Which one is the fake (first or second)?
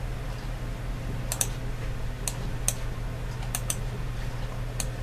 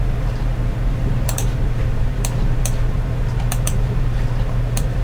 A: second